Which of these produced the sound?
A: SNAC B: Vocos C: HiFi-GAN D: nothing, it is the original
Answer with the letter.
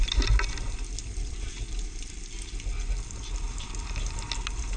D